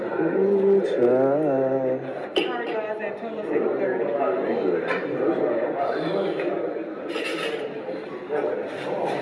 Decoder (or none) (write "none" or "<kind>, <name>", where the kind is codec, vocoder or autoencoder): none